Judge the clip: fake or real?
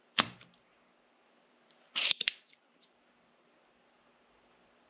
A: fake